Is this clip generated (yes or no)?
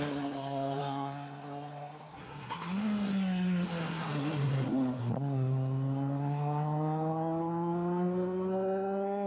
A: yes